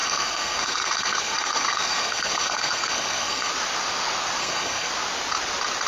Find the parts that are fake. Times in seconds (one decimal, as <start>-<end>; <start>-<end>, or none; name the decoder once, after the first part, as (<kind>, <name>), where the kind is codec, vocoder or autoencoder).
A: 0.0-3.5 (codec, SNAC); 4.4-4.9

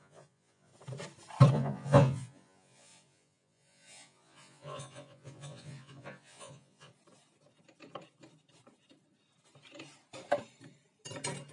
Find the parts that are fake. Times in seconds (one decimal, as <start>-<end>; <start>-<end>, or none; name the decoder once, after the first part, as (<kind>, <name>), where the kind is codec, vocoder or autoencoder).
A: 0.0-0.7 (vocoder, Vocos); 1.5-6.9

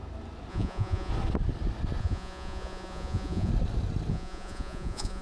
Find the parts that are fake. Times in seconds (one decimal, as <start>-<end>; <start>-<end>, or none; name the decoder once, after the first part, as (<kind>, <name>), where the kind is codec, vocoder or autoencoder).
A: 0.5-1.1 (vocoder, Vocos); 2.0-3.5; 4.1-5.2